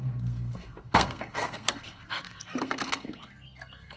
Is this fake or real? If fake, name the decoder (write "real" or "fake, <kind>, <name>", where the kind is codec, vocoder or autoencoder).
fake, codec, SNAC